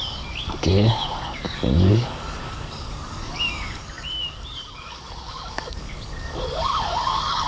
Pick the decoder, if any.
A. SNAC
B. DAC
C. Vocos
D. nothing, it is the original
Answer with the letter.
B